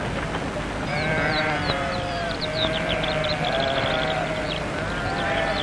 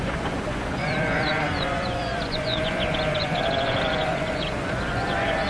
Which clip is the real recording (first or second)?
first